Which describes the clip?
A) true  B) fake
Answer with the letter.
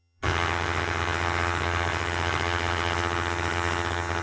B